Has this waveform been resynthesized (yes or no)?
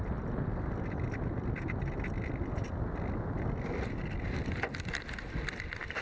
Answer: yes